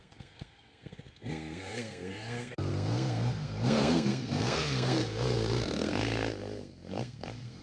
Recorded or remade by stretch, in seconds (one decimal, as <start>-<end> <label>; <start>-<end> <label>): 0.0-7.6 remade